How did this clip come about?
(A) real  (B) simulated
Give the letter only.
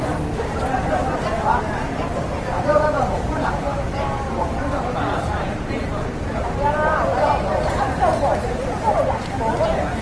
A